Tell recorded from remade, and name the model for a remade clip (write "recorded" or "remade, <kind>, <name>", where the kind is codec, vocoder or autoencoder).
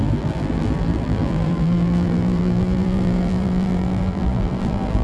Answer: remade, vocoder, BigVGAN v2